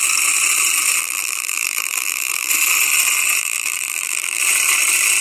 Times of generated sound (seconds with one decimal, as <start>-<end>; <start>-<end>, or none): 1.0-2.5; 3.4-4.4